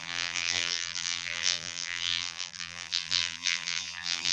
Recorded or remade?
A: remade